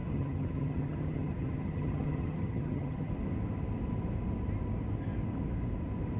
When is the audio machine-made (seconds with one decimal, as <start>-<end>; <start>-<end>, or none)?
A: 0.0-3.1